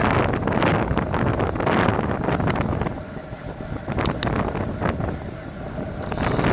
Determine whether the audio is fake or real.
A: real